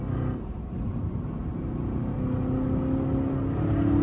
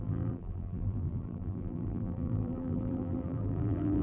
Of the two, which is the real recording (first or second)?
first